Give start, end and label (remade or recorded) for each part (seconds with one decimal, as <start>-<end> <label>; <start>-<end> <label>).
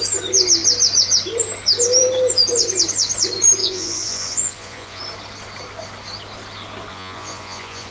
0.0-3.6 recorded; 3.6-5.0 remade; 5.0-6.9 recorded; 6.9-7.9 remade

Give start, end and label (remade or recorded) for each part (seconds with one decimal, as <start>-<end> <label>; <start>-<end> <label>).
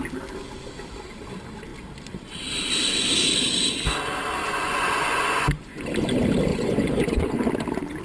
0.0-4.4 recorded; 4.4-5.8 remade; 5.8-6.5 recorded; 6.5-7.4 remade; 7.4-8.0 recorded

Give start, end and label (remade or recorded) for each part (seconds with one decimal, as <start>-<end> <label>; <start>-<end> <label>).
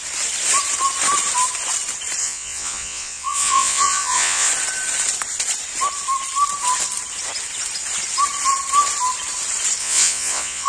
0.0-2.2 recorded; 2.2-4.5 remade; 4.5-9.8 recorded; 9.8-10.7 remade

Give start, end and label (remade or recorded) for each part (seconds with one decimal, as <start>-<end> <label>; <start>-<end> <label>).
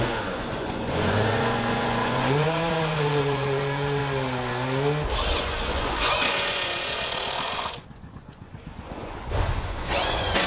0.0-4.0 remade; 4.0-5.4 recorded; 5.4-10.5 remade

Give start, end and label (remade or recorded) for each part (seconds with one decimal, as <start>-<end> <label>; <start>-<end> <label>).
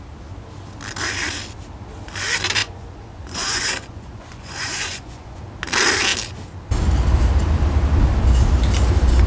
0.0-2.6 recorded; 2.6-5.4 remade; 5.4-9.3 recorded